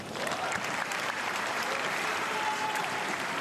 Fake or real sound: fake